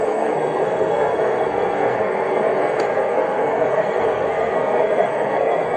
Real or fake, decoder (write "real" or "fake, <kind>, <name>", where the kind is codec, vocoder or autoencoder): fake, codec, SNAC